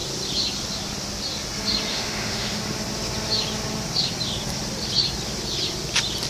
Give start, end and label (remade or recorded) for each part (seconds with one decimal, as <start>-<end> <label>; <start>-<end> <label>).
0.0-1.9 recorded; 1.9-2.6 remade; 2.6-6.3 recorded